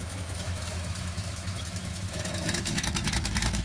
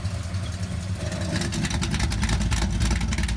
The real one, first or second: second